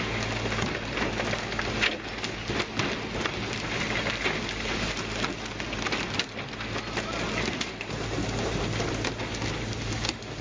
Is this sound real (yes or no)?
yes